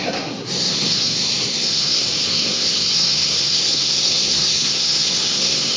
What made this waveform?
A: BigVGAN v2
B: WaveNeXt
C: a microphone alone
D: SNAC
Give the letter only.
D